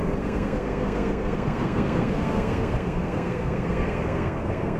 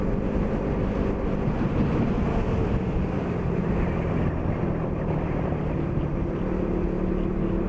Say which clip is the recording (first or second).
second